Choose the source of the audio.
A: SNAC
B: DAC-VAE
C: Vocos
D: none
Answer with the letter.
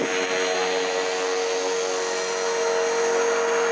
D